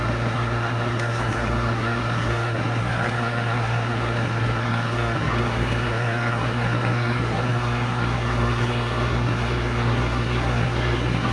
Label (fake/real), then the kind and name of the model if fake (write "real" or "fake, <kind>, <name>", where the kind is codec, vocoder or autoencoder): fake, codec, SNAC